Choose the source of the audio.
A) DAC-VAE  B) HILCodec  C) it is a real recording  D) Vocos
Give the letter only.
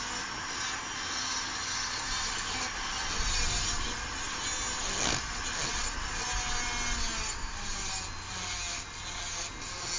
C